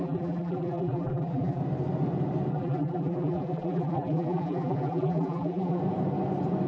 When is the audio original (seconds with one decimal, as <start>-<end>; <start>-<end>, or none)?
1.6-2.5; 5.8-6.7

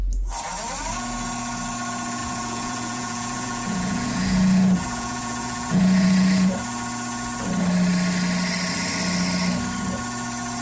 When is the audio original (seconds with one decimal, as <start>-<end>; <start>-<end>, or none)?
0.0-2.2; 6.5-10.6

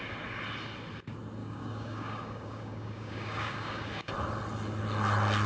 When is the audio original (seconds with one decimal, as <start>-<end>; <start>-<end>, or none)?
0.0-1.4; 4.1-5.5

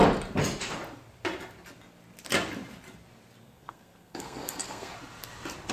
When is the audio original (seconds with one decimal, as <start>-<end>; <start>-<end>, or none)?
0.0-3.4; 4.9-5.7

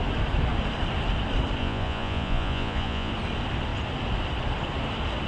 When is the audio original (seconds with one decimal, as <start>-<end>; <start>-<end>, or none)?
0.0-1.6; 3.1-5.3

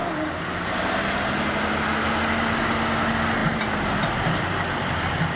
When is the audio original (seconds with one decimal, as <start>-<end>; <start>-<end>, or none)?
0.0-5.4

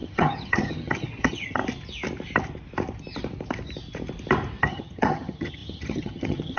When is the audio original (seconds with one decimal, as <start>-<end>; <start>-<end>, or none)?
1.6-4.6